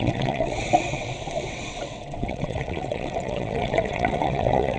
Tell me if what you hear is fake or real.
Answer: fake